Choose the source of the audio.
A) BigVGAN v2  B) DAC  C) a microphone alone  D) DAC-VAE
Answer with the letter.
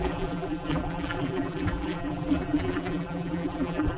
A